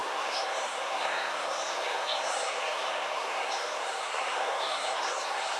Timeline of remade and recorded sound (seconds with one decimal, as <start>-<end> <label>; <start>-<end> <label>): 0.0-5.6 remade